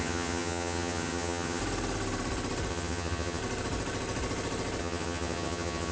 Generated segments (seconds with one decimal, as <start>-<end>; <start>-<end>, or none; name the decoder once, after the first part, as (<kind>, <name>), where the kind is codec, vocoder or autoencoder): 0.0-1.6 (vocoder, HiFi-GAN); 2.7-3.4; 4.8-5.9